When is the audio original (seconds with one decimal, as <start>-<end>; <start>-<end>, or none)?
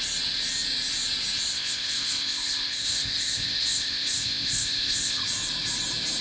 0.0-1.5; 5.2-6.2